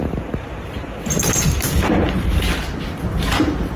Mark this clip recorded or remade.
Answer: remade